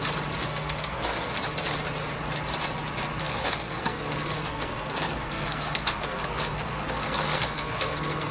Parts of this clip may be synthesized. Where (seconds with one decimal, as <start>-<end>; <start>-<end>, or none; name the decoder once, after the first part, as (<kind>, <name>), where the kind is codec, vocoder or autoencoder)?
0.4-1.4 (codec, SNAC); 3.2-8.3